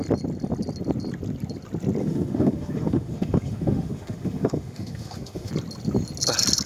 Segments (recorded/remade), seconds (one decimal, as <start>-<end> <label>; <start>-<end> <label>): 0.0-2.0 recorded; 2.0-5.5 remade; 5.5-6.7 recorded